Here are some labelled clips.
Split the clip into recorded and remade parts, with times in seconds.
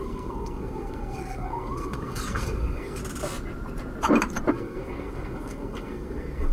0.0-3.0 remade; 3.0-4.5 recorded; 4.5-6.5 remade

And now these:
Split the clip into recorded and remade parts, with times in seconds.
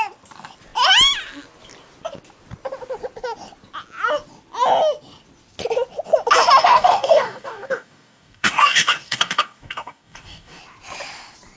0.0-6.6 recorded; 6.6-10.6 remade; 10.6-11.6 recorded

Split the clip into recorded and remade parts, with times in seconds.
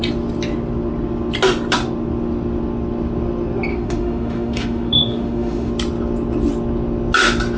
0.0-3.7 recorded; 3.7-5.7 remade; 5.7-7.6 recorded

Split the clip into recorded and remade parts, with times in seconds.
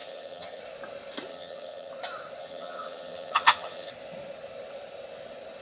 0.0-0.6 remade; 0.6-1.3 recorded; 1.3-1.9 remade; 1.9-2.4 recorded; 2.4-3.9 remade; 3.9-5.6 recorded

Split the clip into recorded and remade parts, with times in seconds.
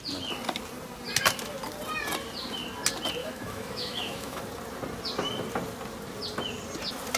0.0-3.2 recorded; 3.2-4.4 remade; 4.4-7.2 recorded